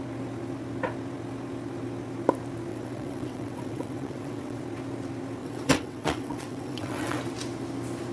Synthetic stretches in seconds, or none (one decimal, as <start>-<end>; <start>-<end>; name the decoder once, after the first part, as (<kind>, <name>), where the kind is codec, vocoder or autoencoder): 2.7-4.6 (vocoder, WaveNeXt); 5.4-7.2

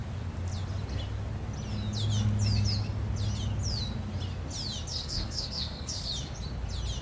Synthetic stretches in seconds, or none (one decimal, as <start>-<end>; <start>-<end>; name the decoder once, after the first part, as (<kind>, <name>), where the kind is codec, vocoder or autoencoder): 4.9-6.1 (codec, SNAC)

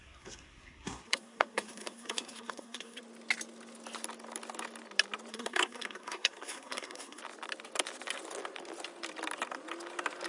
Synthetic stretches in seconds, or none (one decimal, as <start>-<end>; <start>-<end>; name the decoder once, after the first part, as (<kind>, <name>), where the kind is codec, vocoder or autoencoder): 0.0-3.0 (codec, SNAC); 5.3-7.2

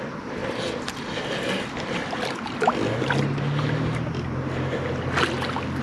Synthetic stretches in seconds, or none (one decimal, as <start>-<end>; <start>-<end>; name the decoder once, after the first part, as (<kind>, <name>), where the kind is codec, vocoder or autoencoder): none

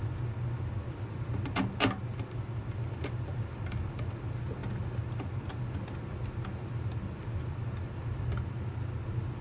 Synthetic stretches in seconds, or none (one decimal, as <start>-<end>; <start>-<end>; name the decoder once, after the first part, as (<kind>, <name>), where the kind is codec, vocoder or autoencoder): none

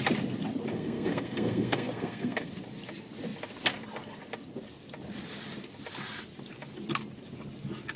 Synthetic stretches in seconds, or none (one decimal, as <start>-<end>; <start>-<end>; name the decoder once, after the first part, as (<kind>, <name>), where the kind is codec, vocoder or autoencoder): 0.7-2.5 (codec, SNAC)

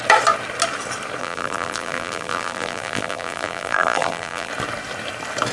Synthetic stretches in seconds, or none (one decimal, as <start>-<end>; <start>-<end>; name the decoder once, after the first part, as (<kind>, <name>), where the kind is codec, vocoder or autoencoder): 1.2-4.5 (vocoder, BigVGAN v2)

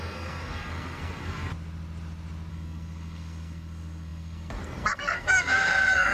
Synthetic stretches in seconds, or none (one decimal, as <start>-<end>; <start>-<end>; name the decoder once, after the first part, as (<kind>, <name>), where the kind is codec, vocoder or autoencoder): 0.0-1.5 (codec, SNAC); 2.5-6.1